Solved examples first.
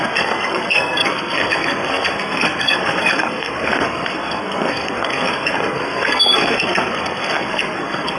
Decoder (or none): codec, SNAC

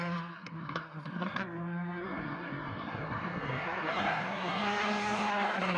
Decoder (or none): codec, SNAC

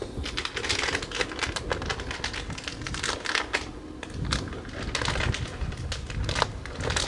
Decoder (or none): none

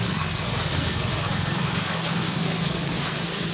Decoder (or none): codec, SNAC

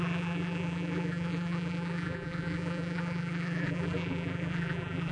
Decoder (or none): vocoder, BigVGAN v2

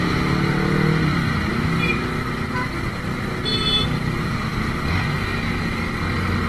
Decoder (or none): none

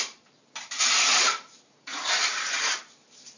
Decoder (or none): vocoder, BigVGAN v2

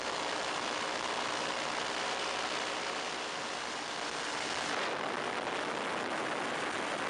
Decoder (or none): none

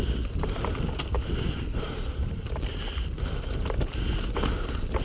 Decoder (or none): none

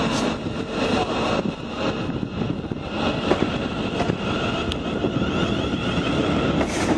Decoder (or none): none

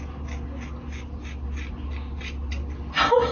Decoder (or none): none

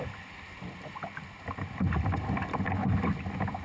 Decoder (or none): none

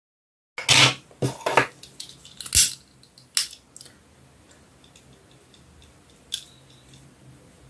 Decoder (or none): none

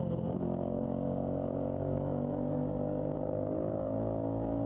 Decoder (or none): codec, DAC